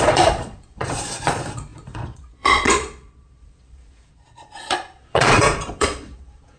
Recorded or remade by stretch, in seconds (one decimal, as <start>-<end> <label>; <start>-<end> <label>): 0.0-6.6 remade